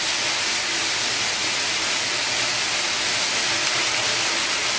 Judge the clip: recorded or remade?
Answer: recorded